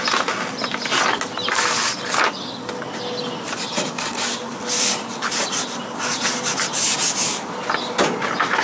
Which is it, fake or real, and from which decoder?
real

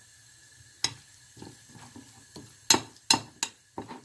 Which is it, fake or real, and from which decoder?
real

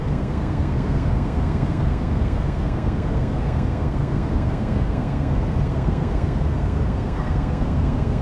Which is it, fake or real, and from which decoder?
fake, codec, SNAC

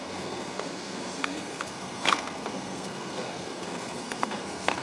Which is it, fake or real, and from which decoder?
fake, codec, SNAC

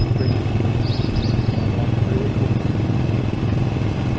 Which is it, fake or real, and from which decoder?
real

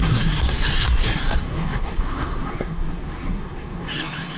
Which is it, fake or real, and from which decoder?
fake, codec, SNAC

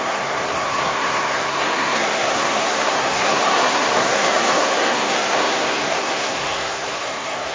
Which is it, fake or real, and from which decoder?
fake, codec, SNAC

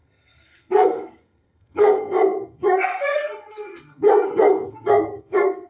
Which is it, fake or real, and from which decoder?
fake, codec, SNAC